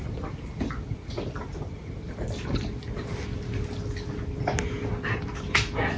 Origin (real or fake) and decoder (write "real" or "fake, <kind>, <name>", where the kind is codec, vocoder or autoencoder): real